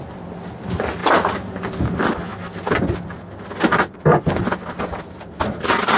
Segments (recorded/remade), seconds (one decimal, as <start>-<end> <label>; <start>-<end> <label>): 0.0-6.0 recorded